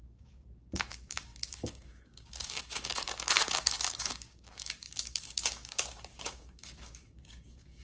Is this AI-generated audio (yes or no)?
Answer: yes